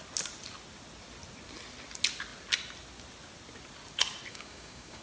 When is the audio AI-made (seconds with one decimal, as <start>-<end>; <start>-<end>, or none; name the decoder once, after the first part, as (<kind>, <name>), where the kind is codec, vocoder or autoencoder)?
4.3-5.0 (codec, DAC)